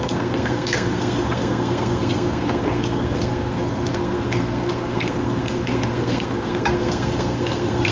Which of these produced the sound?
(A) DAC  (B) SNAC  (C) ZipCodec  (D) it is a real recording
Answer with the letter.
B